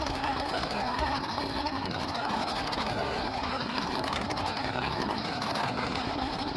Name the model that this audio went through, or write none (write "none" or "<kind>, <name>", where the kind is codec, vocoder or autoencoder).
codec, SNAC